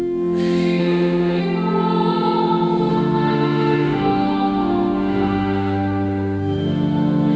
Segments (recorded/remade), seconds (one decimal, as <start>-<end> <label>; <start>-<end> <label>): 0.0-0.8 recorded; 0.8-1.4 remade; 1.4-2.9 recorded; 2.9-7.4 remade